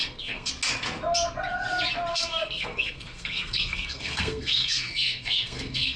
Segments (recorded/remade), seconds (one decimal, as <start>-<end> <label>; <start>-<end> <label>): 0.0-0.5 remade; 0.5-2.1 recorded; 2.1-6.0 remade